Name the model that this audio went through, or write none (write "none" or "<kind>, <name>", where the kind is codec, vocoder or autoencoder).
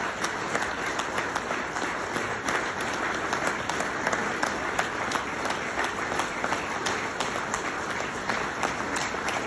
none